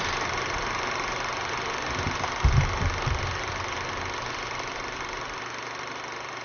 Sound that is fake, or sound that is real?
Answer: real